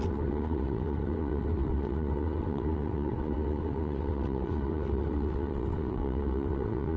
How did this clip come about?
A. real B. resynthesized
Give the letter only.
B